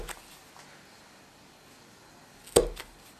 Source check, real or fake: real